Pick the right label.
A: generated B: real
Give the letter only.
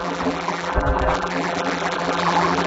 A